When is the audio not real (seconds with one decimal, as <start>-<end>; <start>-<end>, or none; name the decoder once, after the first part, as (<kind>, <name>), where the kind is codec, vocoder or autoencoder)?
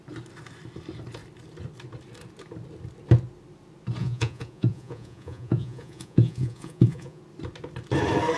4.0-7.2 (vocoder, Vocos)